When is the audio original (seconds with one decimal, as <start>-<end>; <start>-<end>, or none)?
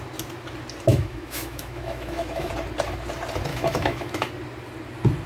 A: 0.0-0.9; 2.5-3.5; 4.3-5.3